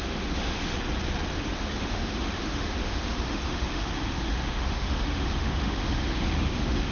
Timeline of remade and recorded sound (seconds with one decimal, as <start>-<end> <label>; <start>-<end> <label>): 0.0-0.7 remade; 0.7-1.3 recorded; 1.3-6.9 remade